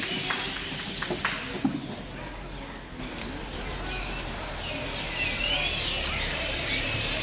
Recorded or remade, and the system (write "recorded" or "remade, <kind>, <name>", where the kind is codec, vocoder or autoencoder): recorded